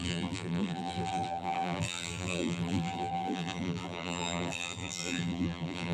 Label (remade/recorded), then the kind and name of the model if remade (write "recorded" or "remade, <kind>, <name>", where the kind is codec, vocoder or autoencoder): remade, vocoder, BigVGAN v2